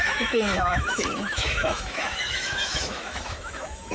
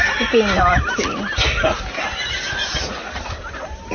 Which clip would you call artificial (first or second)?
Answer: first